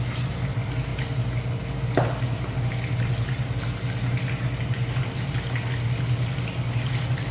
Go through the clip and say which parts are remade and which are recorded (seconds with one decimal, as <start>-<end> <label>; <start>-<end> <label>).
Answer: 0.0-7.3 recorded